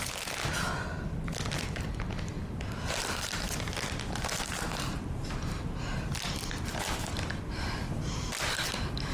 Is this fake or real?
real